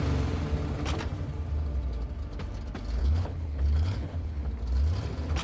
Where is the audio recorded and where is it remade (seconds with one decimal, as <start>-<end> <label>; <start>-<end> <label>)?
0.0-3.0 recorded; 3.0-4.5 remade; 4.5-5.4 recorded